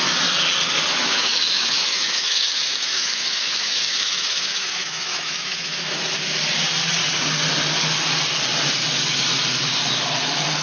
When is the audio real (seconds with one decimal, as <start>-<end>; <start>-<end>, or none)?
0.0-0.9; 6.0-10.6

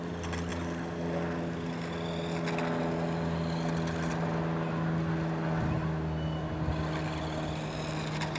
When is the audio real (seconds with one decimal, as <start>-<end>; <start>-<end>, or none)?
0.0-8.4

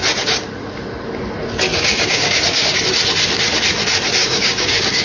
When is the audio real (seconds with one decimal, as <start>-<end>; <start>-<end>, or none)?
0.0-1.7; 2.8-4.2

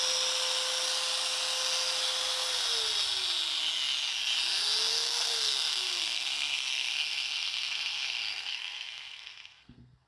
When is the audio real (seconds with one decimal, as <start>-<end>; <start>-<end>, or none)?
0.0-4.9

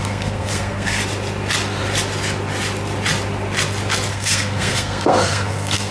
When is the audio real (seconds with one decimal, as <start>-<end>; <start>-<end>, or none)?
1.0-4.1

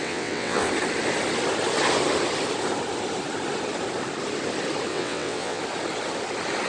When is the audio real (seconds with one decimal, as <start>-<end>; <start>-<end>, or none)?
0.7-4.9; 5.6-6.7